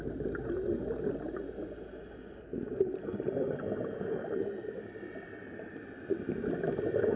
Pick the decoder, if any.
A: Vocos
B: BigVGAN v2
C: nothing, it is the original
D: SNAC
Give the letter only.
C